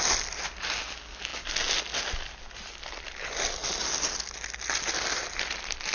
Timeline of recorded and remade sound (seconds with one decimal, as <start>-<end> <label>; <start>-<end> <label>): 0.0-5.9 recorded